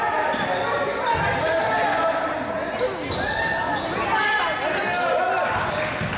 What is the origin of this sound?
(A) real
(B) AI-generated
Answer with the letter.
A